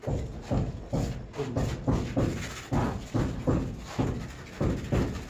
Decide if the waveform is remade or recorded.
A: recorded